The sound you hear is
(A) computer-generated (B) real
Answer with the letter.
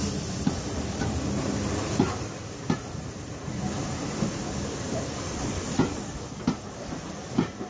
B